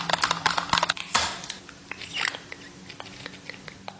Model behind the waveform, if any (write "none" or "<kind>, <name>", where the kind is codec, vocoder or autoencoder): none